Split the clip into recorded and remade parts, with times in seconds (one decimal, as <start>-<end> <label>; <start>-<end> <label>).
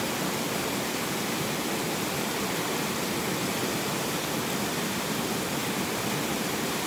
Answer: 0.0-6.9 recorded